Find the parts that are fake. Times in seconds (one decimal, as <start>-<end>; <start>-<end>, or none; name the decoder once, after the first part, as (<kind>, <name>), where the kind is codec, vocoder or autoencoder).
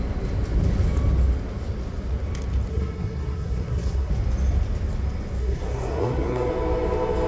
2.7-4.1 (codec, SNAC); 5.4-6.5